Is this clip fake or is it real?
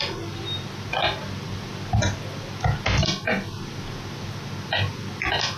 real